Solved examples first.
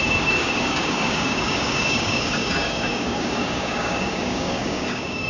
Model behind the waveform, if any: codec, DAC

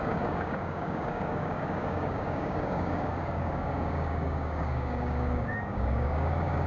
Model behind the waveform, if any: codec, DAC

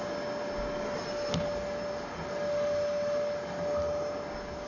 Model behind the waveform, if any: none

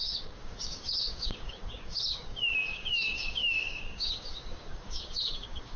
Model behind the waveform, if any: codec, DAC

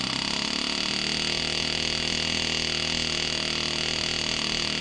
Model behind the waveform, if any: none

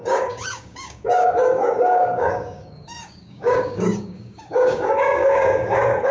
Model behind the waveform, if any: codec, DAC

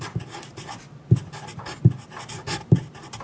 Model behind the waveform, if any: none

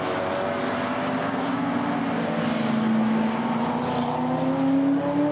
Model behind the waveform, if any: none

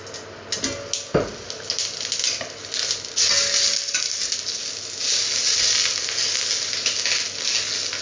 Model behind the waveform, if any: none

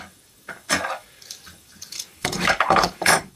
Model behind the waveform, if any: codec, DAC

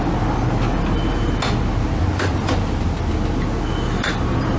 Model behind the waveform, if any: none